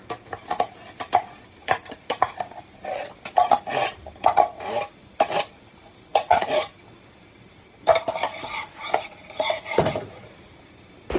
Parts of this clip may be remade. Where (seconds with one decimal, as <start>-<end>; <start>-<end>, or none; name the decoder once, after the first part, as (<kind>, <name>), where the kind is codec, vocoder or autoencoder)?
1.6-2.4 (vocoder, Vocos); 6.1-6.8; 8.3-10.5